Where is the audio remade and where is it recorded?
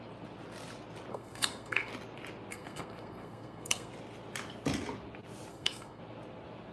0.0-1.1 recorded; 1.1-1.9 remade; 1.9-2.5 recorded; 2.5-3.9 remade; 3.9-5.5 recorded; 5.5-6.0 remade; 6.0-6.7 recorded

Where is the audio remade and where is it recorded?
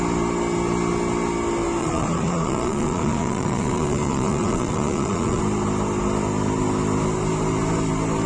0.0-1.8 recorded; 1.8-5.4 remade; 5.4-8.3 recorded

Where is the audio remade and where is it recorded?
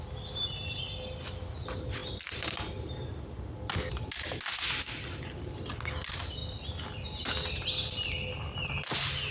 0.0-9.3 recorded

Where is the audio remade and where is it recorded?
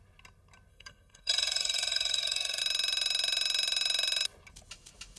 0.0-0.7 recorded; 0.7-2.6 remade; 2.6-5.2 recorded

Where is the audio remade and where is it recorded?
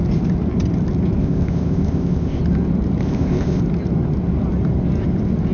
0.0-1.2 recorded; 1.2-2.4 remade; 2.4-3.0 recorded; 3.0-3.6 remade; 3.6-5.5 recorded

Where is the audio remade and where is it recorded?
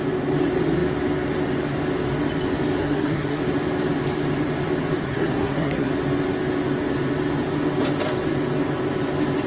0.0-2.8 recorded; 2.8-3.4 remade; 3.4-5.0 recorded; 5.0-5.9 remade; 5.9-9.5 recorded